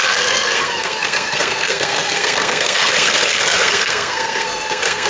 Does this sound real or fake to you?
fake